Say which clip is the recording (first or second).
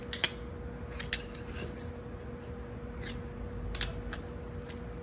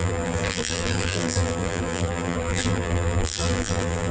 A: first